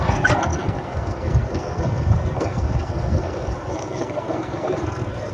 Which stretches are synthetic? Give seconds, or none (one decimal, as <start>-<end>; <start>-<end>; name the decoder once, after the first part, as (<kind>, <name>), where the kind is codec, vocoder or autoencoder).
0.0-5.3 (codec, SNAC)